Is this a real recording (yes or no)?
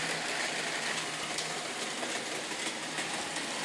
yes